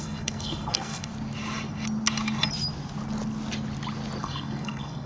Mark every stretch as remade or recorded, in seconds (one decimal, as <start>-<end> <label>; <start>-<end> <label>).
0.0-1.1 remade; 1.1-4.2 recorded; 4.2-5.1 remade